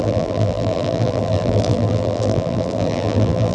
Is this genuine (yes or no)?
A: no